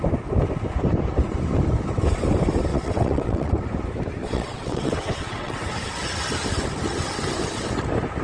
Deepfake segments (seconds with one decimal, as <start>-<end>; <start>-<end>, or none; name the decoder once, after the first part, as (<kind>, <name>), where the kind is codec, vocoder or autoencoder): 2.7-3.5 (vocoder, WaveNeXt); 4.2-5.8